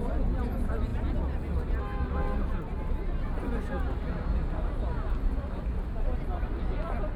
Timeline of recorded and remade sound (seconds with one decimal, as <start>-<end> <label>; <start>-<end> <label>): 0.0-7.2 recorded